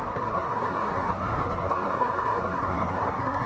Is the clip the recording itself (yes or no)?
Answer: no